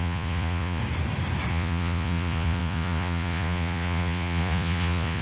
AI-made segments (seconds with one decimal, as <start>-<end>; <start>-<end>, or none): 0.0-0.8; 1.5-5.2